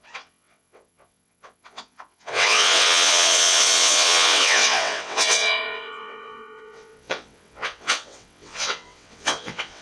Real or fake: fake